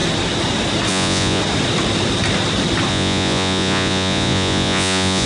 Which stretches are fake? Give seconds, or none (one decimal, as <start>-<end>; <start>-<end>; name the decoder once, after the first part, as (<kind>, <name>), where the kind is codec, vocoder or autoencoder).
0.9-1.4 (vocoder, Vocos); 2.9-5.3